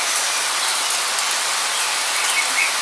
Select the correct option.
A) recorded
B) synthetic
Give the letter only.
A